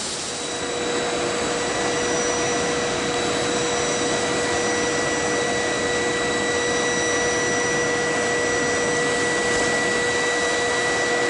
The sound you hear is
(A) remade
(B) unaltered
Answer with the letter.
B